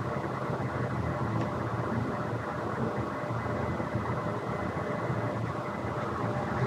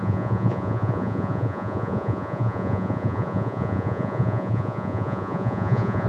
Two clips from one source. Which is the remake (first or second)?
second